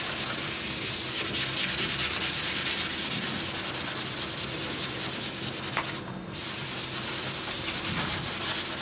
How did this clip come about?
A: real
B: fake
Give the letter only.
A